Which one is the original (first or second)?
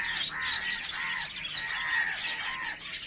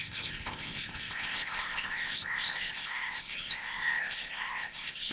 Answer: first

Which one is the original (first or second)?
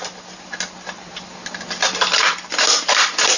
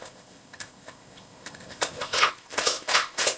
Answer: first